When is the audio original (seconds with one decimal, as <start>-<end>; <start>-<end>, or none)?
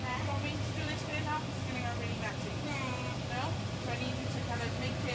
1.1-3.6